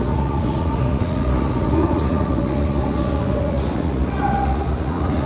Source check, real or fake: fake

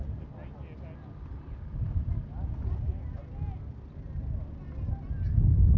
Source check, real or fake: real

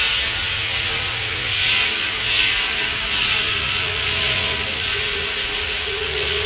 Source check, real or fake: fake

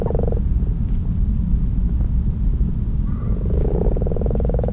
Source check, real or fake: real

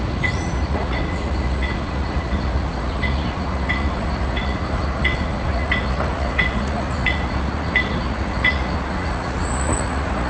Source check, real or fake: fake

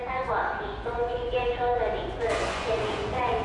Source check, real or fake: fake